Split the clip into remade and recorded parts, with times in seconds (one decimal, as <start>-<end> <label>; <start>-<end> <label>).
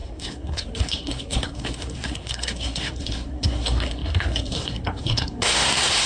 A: 0.0-6.1 remade